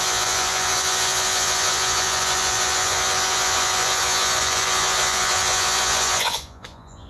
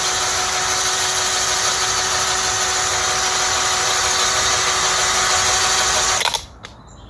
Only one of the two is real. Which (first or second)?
second